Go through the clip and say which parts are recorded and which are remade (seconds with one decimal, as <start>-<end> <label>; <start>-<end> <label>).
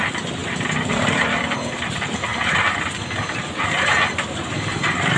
0.0-2.3 remade; 2.3-4.1 recorded; 4.1-5.2 remade